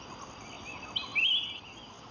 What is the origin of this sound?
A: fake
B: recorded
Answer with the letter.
B